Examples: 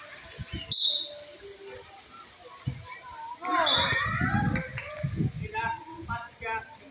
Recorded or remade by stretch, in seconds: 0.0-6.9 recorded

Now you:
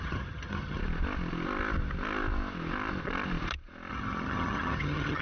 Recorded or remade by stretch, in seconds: 0.0-0.8 remade; 0.8-3.9 recorded; 3.9-5.2 remade

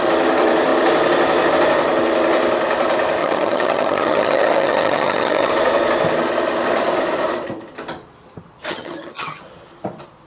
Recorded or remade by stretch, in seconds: 0.0-3.2 recorded; 3.2-5.5 remade; 5.5-8.7 recorded; 8.7-9.4 remade; 9.4-10.3 recorded

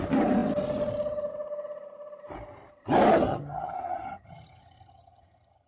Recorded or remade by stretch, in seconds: 0.0-3.3 recorded; 3.3-5.7 remade